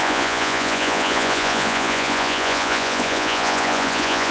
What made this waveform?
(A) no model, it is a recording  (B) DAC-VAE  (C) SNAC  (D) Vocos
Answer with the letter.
D